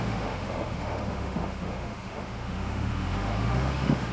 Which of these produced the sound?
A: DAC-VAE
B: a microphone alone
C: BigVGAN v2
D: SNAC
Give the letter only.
A